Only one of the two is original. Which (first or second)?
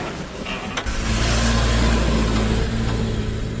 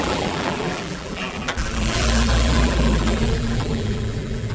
first